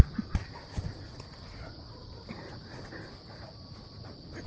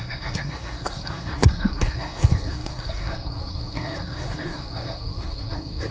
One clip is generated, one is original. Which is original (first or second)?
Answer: first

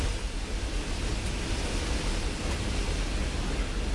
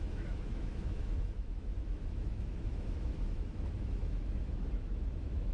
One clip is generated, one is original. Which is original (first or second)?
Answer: first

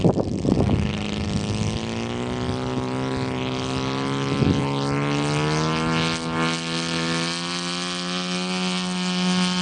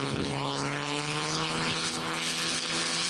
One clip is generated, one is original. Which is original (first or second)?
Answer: first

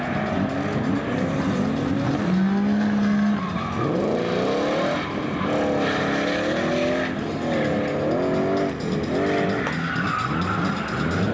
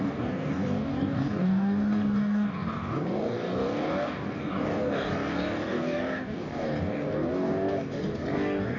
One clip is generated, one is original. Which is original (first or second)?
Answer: first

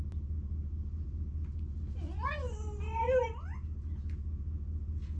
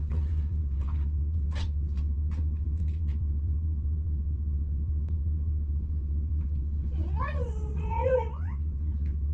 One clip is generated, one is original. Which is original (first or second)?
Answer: first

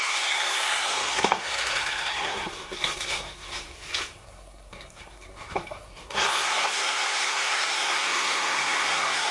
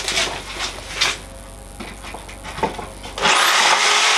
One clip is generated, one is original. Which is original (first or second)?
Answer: second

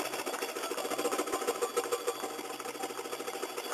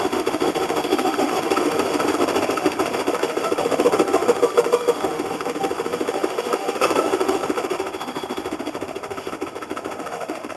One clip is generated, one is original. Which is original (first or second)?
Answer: first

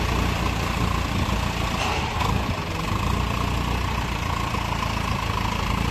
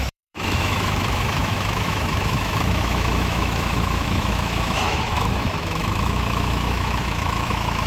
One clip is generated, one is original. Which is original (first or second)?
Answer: first